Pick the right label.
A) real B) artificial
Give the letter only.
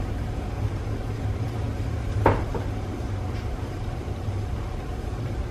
B